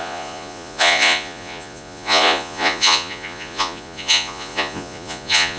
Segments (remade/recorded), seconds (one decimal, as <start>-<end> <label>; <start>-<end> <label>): 0.0-5.6 remade

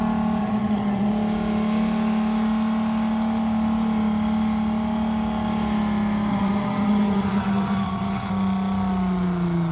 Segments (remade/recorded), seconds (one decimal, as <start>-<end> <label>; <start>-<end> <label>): 0.0-0.4 recorded; 0.4-1.1 remade; 1.1-6.3 recorded; 6.3-8.3 remade; 8.3-9.7 recorded

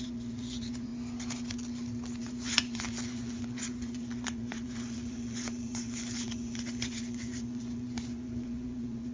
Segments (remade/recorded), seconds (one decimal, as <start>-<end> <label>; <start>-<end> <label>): 0.0-0.9 remade; 0.9-2.2 recorded; 2.2-9.1 remade

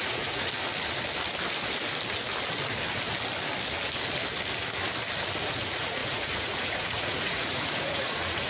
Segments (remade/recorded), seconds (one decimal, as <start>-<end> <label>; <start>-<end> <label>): 0.0-0.5 remade; 0.5-5.4 recorded; 5.4-8.5 remade